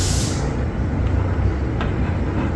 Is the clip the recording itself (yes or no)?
yes